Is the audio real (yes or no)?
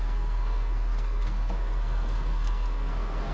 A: no